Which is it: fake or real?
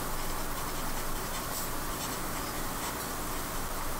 real